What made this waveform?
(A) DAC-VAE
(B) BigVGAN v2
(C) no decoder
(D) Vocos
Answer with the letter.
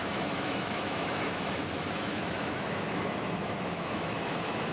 A